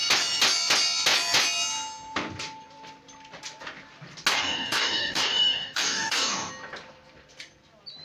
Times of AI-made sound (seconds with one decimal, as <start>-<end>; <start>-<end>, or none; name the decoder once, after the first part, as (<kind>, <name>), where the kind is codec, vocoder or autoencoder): 4.3-6.5 (codec, DAC)